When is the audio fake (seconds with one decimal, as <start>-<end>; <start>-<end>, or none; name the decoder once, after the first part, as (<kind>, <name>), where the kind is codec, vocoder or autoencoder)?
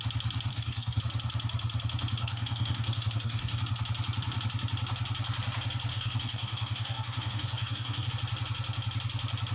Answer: 0.5-1.0 (codec, DAC); 2.2-3.6; 5.9-8.1